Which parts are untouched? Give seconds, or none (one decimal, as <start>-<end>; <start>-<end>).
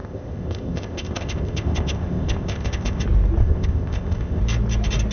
3.0-3.4; 4.4-5.1